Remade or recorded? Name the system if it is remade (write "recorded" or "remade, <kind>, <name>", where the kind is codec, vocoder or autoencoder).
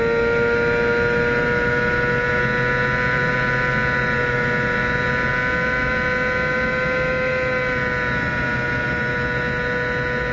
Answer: recorded